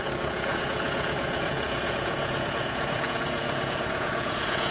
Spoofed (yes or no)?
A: yes